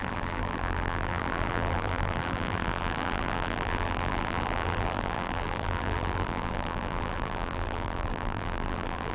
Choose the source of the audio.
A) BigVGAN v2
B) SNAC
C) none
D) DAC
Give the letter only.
A